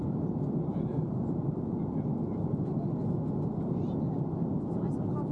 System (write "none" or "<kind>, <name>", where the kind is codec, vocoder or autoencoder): none